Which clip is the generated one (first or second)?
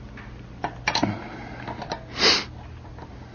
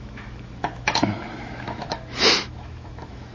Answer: second